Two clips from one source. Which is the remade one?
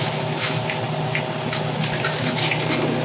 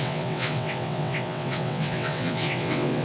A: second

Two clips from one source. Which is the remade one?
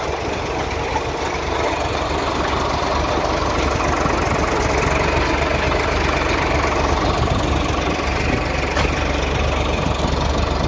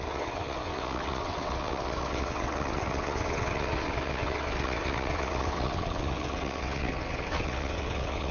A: second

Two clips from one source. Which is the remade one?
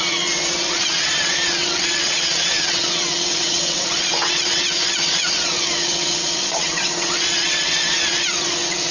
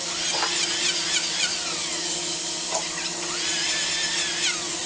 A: first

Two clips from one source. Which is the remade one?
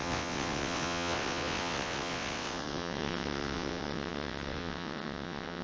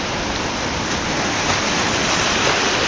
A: first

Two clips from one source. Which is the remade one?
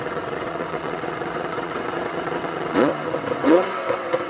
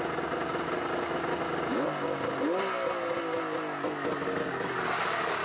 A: first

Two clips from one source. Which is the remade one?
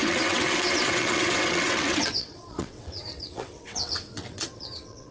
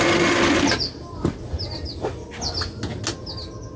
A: first